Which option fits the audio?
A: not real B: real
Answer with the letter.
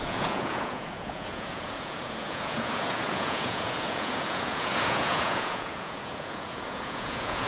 A